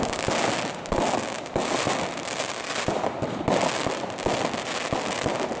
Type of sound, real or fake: real